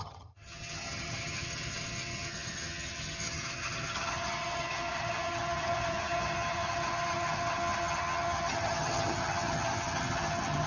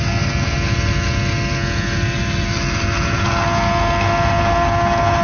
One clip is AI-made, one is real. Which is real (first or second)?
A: second